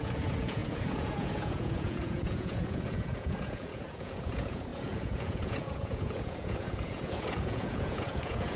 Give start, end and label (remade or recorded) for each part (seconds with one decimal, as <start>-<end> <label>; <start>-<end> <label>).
0.0-8.6 remade